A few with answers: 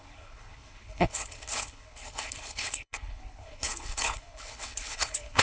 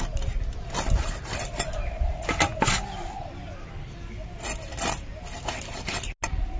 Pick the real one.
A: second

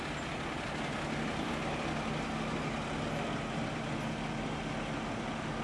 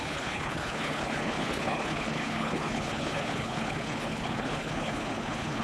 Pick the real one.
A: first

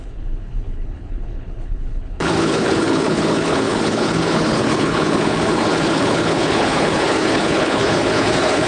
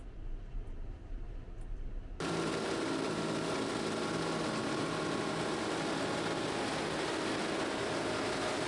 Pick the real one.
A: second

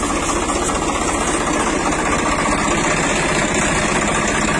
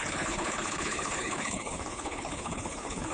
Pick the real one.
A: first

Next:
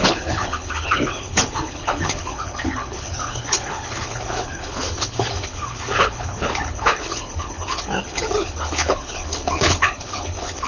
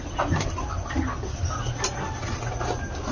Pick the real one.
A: second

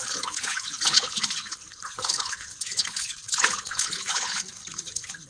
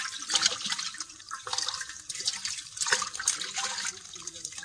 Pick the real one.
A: second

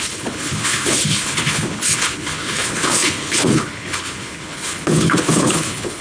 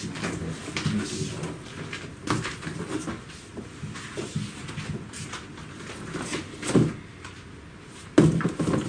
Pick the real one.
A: second